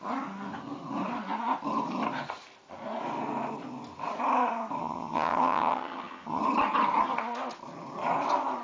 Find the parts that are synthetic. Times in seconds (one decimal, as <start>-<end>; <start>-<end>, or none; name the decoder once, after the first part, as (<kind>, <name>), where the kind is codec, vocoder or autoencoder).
4.8-6.4 (vocoder, HiFi-GAN)